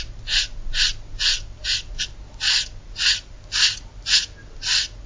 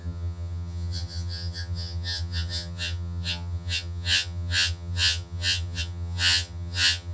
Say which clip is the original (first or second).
first